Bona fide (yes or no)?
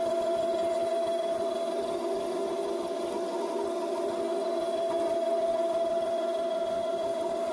yes